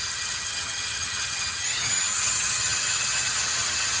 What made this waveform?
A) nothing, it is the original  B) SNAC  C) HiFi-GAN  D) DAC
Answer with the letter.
C